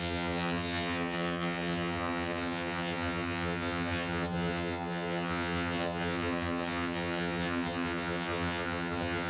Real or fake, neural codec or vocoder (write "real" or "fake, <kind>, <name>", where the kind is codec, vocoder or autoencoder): fake, vocoder, HiFi-GAN